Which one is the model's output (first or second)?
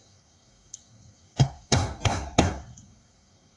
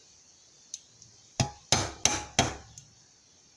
first